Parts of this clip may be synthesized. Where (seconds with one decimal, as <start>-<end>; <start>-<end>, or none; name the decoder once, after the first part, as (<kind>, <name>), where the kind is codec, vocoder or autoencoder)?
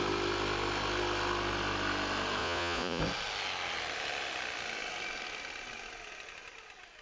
2.4-3.0 (vocoder, Vocos)